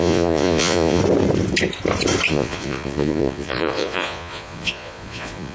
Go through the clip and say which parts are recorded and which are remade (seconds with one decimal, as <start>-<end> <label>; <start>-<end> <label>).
0.0-1.0 remade; 1.0-2.3 recorded; 2.3-5.5 remade